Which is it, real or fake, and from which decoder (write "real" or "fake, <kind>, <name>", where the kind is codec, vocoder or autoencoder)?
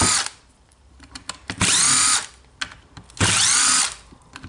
real